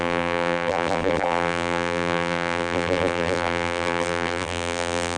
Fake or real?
fake